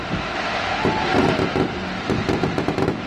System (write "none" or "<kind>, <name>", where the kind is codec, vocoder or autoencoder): none